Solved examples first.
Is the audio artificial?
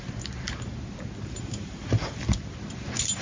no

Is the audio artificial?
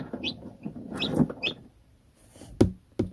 no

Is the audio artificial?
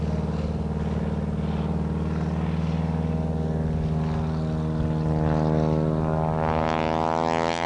no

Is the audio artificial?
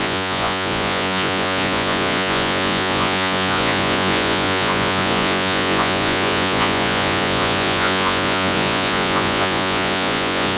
yes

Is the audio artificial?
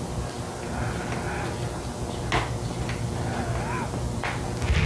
no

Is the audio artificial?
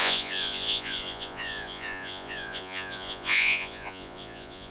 yes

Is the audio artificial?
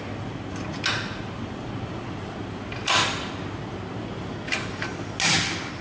no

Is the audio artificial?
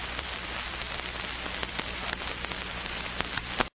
no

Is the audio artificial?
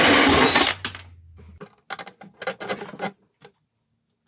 no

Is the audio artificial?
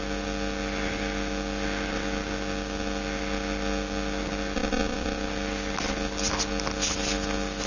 no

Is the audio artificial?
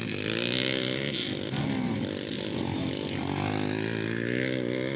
no